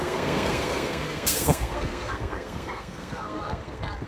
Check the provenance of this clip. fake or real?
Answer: fake